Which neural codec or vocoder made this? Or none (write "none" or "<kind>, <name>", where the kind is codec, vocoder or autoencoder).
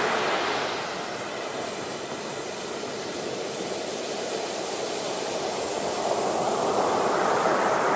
none